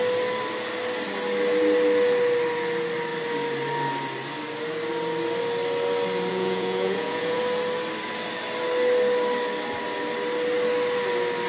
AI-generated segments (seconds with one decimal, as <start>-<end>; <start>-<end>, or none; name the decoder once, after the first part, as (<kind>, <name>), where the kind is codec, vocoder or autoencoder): 6.3-7.4 (vocoder, Vocos)